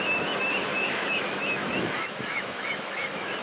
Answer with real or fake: fake